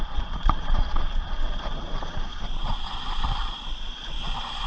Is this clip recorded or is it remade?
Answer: remade